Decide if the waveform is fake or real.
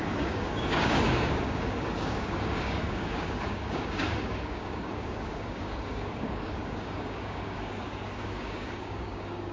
fake